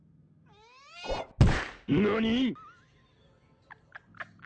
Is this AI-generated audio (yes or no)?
no